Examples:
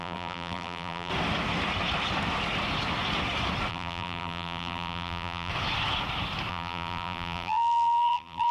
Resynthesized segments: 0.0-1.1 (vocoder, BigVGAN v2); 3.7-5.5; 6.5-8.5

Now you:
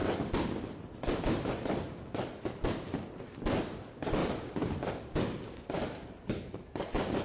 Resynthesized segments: 4.2-7.2 (vocoder, BigVGAN v2)

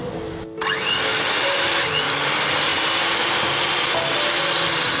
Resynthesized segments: 1.1-1.9 (vocoder, BigVGAN v2); 2.7-3.7

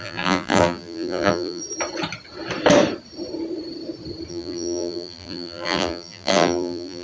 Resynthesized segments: 0.0-1.6 (vocoder, BigVGAN v2); 4.3-7.0

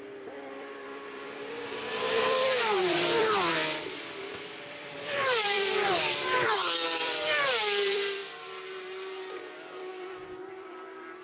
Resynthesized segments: 0.0-3.5 (vocoder, BigVGAN v2); 4.2-8.2; 9.9-11.2

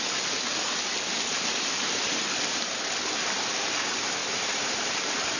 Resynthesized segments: 2.0-2.7 (vocoder, BigVGAN v2); 4.2-5.4